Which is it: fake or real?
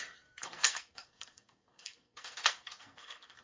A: fake